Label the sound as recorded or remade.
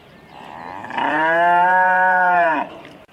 remade